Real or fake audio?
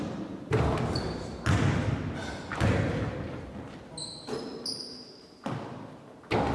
real